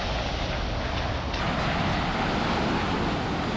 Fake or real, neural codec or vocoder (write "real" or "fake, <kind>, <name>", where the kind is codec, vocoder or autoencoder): real